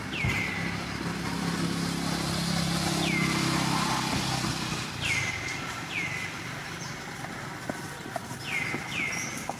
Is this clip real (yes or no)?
yes